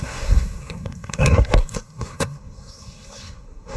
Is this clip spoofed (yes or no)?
yes